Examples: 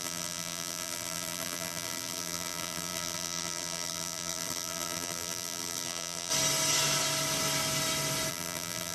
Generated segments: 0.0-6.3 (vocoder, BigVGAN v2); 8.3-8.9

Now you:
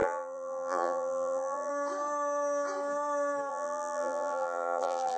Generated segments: 0.0-1.7 (vocoder, BigVGAN v2); 3.5-5.2

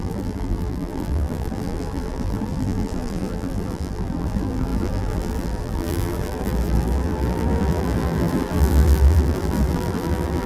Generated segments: 0.0-10.5 (vocoder, BigVGAN v2)

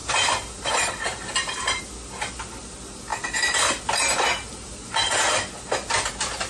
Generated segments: 0.0-1.8 (vocoder, BigVGAN v2)